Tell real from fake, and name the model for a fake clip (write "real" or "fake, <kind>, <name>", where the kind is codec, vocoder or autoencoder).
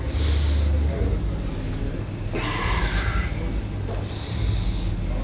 real